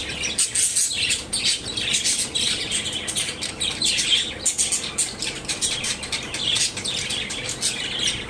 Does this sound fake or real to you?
real